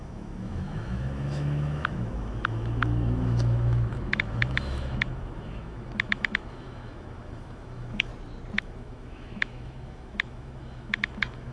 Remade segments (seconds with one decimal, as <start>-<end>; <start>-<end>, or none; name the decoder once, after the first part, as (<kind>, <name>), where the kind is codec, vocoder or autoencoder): 0.0-8.1 (autoencoder, DAC-VAE); 8.6-11.5